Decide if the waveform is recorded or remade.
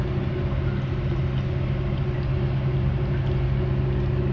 recorded